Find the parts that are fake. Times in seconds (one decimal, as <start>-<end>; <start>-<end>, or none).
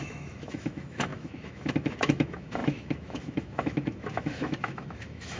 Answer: 0.0-5.4